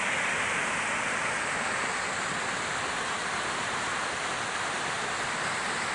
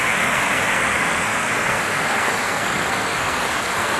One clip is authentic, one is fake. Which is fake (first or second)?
second